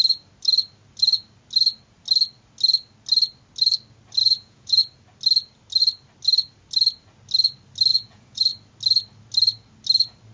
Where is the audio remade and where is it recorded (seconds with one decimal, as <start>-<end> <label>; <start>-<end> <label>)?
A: 0.0-4.2 recorded; 4.2-4.8 remade; 4.8-7.9 recorded; 7.9-8.5 remade; 8.5-10.3 recorded